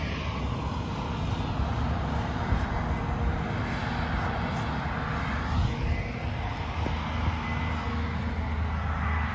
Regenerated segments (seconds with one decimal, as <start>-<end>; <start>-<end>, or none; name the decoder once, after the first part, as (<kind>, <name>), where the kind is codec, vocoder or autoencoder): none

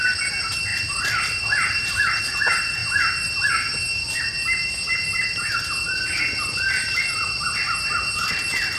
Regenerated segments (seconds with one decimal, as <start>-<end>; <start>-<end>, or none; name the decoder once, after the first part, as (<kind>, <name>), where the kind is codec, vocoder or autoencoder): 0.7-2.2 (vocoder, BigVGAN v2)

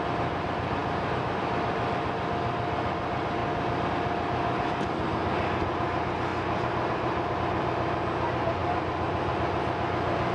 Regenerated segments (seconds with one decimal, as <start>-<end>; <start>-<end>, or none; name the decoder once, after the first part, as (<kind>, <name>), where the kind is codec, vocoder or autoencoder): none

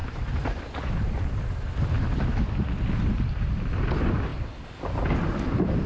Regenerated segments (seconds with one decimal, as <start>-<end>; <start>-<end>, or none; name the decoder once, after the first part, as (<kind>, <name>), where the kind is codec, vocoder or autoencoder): 0.0-0.8 (vocoder, BigVGAN v2)

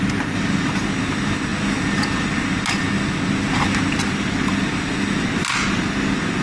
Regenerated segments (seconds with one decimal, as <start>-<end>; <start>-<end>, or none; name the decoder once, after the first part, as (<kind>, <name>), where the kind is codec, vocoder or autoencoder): none

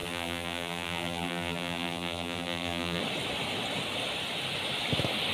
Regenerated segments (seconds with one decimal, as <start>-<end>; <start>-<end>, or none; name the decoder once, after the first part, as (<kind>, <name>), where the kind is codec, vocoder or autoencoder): 0.0-3.0 (vocoder, BigVGAN v2)

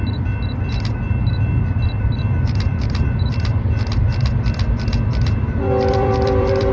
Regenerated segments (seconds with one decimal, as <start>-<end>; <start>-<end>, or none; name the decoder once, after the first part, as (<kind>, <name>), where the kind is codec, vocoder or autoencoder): 0.0-6.7 (vocoder, BigVGAN v2)